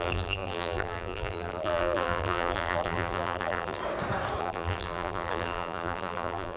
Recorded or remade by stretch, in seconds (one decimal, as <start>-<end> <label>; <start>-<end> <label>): 0.0-3.8 remade; 3.8-4.4 recorded; 4.4-6.6 remade